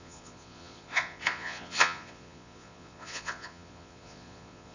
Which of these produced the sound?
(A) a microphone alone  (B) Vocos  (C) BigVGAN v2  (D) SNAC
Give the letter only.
B